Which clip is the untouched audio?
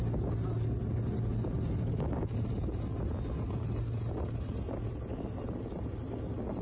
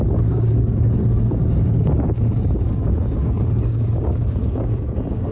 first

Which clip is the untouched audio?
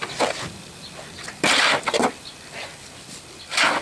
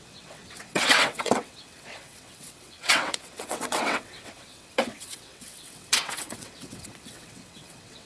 first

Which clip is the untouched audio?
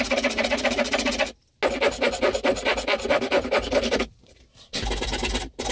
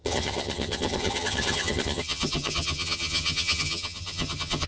first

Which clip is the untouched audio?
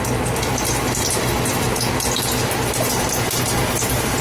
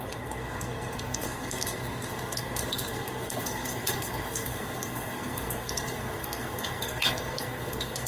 first